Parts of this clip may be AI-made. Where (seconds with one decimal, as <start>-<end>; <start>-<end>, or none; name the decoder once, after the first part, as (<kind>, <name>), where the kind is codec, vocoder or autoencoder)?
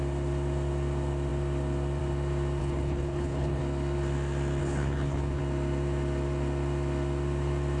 2.6-3.6 (codec, HILCodec); 4.6-5.4